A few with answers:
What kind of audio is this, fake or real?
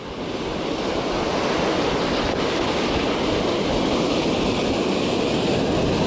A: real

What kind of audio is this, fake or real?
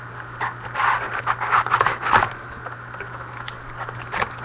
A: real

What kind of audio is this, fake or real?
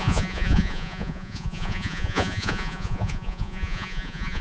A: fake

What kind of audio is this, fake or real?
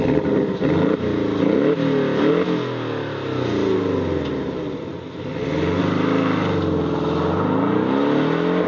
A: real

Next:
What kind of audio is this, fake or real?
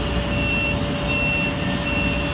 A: real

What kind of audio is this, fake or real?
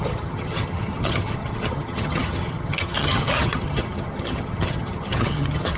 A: fake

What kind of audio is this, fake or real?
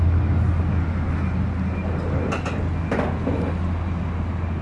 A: real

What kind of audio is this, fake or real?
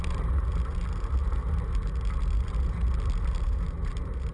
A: real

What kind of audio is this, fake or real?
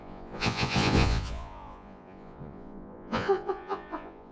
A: fake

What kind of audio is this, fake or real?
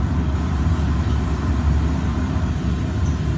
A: real